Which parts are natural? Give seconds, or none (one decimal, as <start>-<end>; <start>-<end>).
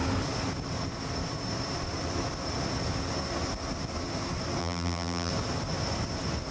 0.0-4.6; 5.3-6.5